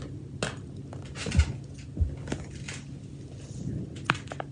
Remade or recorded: recorded